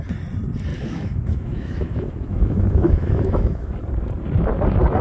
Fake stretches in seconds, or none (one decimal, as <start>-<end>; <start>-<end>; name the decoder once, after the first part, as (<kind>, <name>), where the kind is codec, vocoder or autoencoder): 0.7-3.7 (autoencoder, DAC-VAE)